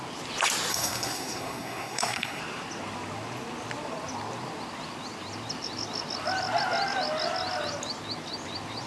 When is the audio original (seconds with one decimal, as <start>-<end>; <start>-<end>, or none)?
0.0-0.7; 2.4-8.9